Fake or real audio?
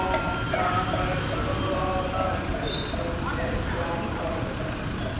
real